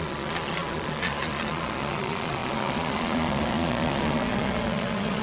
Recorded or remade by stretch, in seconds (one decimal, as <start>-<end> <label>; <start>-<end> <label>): 0.0-5.2 remade